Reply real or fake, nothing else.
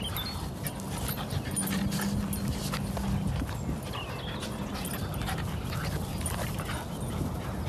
real